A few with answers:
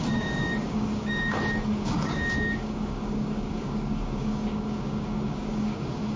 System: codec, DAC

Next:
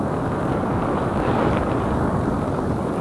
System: codec, DAC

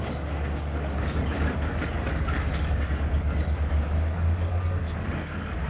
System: codec, DAC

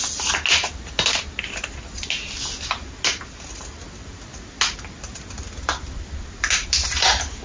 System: none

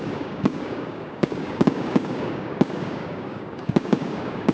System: codec, DAC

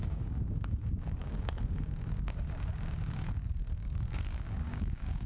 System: codec, DAC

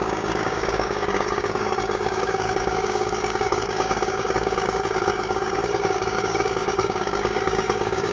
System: codec, DAC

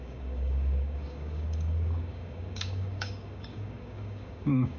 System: codec, DAC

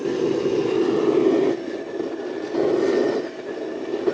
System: none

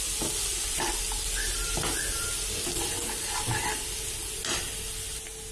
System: none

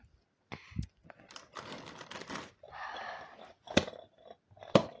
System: none